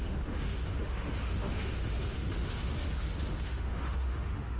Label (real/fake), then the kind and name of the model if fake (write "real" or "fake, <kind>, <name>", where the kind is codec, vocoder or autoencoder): fake, autoencoder, DAC-VAE